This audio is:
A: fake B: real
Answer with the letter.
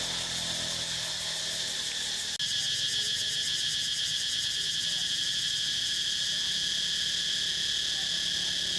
B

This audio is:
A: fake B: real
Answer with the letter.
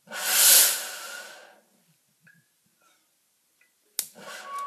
B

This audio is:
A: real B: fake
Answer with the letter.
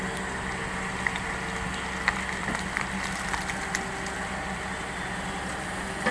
A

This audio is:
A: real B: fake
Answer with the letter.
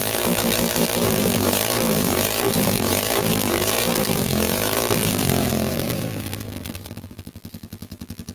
B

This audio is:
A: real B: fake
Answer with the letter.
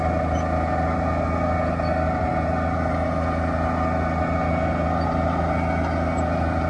A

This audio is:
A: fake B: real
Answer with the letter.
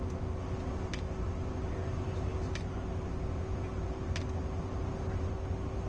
B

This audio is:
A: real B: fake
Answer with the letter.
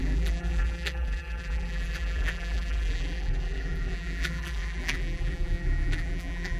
B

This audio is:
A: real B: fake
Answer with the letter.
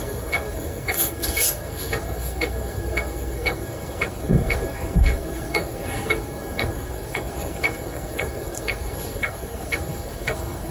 B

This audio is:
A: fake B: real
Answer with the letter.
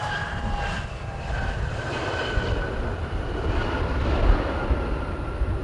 B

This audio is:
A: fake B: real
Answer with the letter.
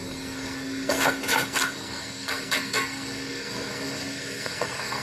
A